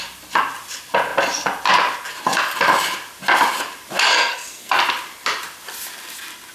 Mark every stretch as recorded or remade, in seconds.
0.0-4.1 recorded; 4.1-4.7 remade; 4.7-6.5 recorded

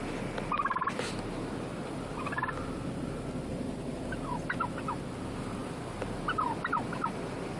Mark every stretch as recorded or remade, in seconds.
0.0-3.5 recorded; 3.5-4.0 remade; 4.0-7.6 recorded

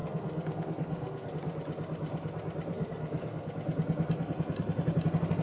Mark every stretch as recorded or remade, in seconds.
0.0-1.3 remade; 1.3-2.7 recorded; 2.7-3.5 remade; 3.5-5.4 recorded

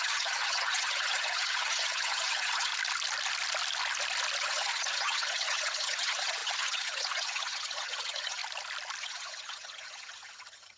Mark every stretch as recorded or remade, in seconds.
0.0-2.7 remade; 2.7-4.4 recorded; 4.4-8.4 remade; 8.4-9.0 recorded; 9.0-10.8 remade

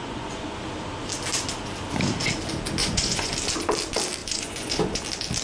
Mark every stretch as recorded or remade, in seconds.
0.0-0.6 remade; 0.6-2.8 recorded; 2.8-3.3 remade; 3.3-4.2 recorded; 4.2-5.0 remade; 5.0-5.4 recorded

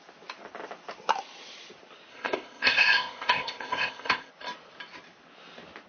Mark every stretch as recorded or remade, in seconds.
0.0-2.1 recorded; 2.1-4.3 remade; 4.3-5.9 recorded

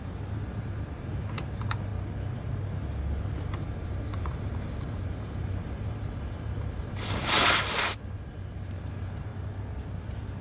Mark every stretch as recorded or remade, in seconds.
0.0-1.9 remade; 1.9-3.5 recorded; 3.5-9.3 remade; 9.3-10.0 recorded; 10.0-10.4 remade

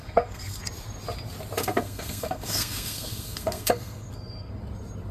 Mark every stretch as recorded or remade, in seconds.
0.0-0.6 remade; 0.6-1.6 recorded; 1.6-4.5 remade; 4.5-5.1 recorded